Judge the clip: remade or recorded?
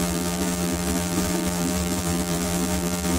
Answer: remade